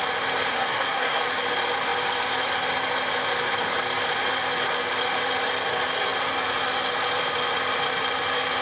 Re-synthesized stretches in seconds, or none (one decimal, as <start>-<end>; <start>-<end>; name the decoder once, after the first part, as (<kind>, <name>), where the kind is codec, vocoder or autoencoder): 0.5-1.2 (codec, SNAC)